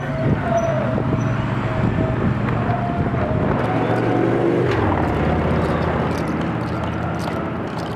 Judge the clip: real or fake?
real